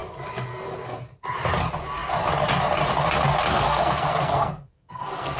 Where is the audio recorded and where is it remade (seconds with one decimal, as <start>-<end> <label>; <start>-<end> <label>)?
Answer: 0.0-3.5 recorded; 3.5-5.4 remade